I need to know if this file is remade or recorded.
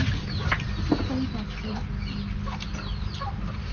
recorded